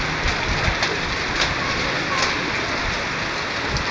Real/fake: real